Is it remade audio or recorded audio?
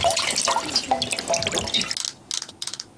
recorded